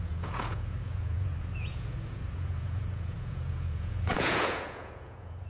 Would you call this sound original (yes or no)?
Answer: no